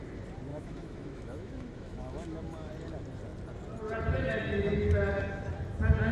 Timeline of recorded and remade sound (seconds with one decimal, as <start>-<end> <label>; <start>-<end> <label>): 0.0-0.5 recorded; 0.5-2.7 remade; 2.7-6.1 recorded